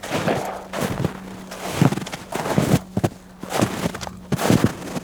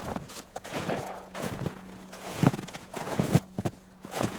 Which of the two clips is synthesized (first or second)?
second